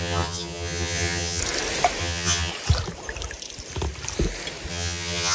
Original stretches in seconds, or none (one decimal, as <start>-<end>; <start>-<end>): 1.4-2.0; 2.5-4.7